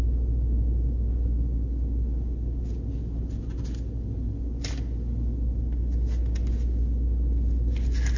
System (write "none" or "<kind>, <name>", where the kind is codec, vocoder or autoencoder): none